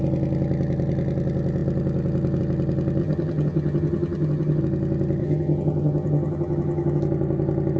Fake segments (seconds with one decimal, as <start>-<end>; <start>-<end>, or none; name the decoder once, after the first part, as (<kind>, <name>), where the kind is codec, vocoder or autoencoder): 3.0-4.6 (vocoder, HiFi-GAN); 5.2-7.0